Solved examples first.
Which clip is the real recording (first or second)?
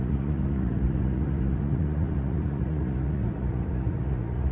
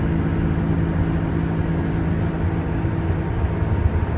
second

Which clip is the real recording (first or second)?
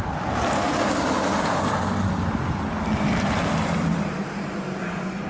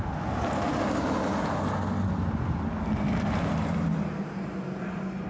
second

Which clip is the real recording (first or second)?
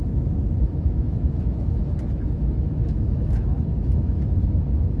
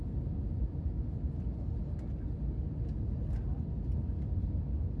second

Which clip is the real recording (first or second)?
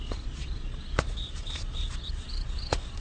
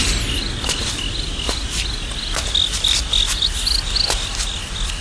second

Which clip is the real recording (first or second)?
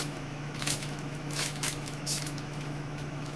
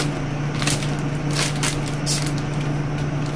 second